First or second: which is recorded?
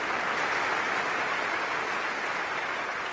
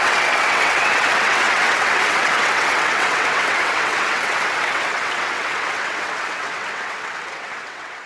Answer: first